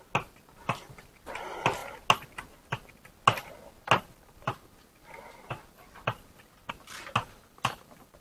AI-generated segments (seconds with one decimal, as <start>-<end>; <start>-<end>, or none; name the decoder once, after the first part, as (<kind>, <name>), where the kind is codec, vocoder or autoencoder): none